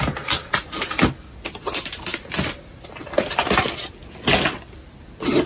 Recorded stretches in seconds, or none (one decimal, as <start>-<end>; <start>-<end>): 0.0-5.5